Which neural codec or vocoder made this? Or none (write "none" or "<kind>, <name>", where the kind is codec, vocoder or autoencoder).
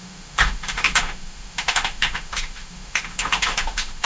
autoencoder, DAC-VAE